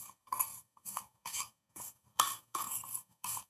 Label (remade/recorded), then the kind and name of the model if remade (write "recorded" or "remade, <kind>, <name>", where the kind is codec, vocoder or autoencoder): remade, codec, SNAC